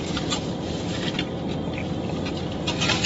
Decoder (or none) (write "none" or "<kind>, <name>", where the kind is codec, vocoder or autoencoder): none